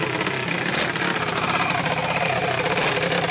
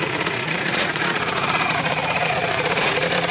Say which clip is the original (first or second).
first